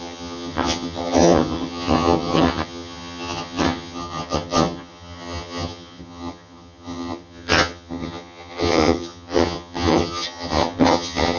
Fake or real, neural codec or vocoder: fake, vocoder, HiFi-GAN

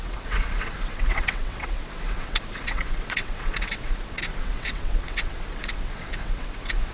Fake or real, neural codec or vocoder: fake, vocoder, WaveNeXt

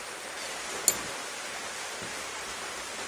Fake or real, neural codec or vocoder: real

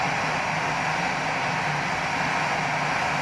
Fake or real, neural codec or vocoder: real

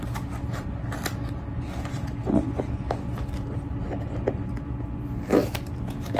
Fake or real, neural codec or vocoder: real